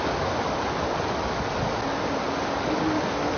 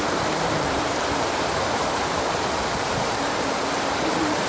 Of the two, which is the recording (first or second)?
first